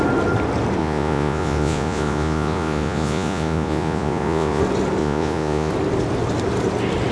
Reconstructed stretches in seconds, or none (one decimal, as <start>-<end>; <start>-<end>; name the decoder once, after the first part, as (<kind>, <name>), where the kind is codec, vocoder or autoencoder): 0.8-4.6 (vocoder, Vocos); 5.0-5.7